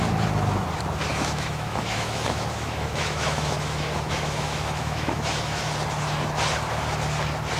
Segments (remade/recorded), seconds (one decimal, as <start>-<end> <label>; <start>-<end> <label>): 0.0-1.1 recorded; 1.1-5.7 remade; 5.7-7.6 recorded